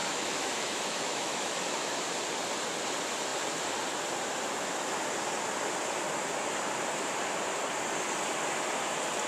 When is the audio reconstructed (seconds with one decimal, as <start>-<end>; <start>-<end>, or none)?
0.0-2.0